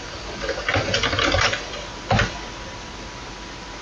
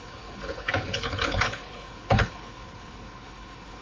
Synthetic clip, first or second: second